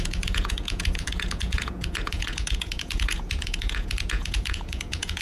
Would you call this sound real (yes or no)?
no